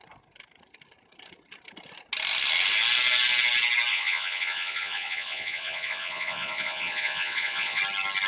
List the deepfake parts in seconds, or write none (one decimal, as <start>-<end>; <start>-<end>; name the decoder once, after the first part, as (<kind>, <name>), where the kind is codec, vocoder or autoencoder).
3.9-7.8 (vocoder, Vocos)